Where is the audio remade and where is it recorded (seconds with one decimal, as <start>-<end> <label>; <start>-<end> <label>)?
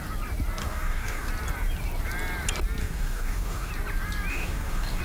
0.0-0.6 recorded; 0.6-1.3 remade; 1.3-2.8 recorded; 2.8-3.7 remade; 3.7-4.3 recorded; 4.3-5.0 remade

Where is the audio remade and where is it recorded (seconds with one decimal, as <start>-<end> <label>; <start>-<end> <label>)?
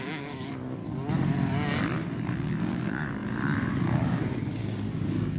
0.0-0.8 remade; 0.8-2.3 recorded; 2.3-5.4 remade